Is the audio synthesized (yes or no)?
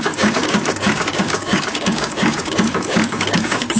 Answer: yes